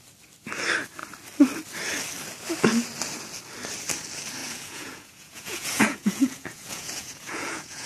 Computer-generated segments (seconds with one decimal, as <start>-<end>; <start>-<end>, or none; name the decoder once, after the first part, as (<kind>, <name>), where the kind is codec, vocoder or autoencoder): 4.4-7.9 (vocoder, Vocos)